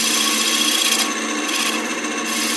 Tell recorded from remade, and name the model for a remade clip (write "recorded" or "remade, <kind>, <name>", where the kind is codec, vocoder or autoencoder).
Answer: recorded